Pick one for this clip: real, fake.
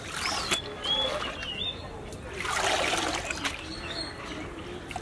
real